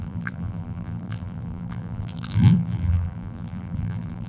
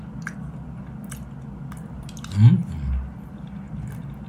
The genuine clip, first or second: second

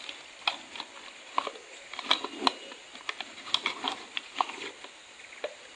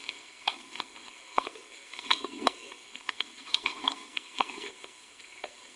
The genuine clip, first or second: first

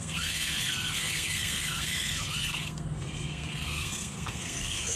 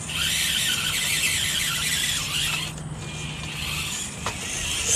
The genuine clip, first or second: second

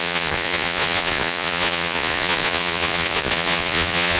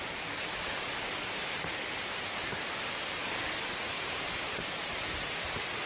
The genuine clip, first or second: second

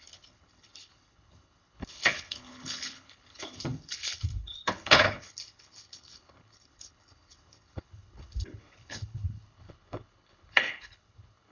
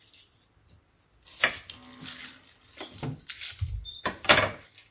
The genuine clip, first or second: second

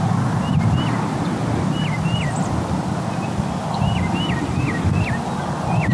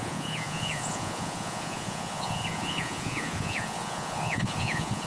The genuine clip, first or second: first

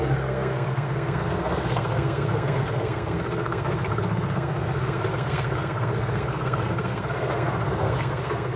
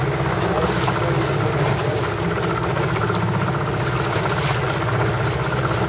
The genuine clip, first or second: second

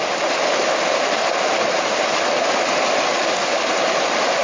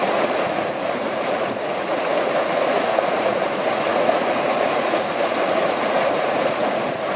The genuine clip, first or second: first